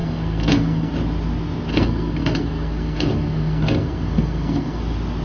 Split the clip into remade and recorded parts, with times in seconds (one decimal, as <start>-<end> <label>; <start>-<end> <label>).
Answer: 0.0-0.9 remade; 0.9-1.7 recorded; 1.7-4.8 remade; 4.8-5.2 recorded